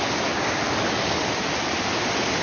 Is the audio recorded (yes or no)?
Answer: yes